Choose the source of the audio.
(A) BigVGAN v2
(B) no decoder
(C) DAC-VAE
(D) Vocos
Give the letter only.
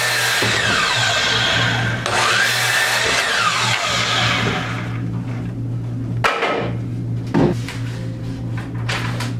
B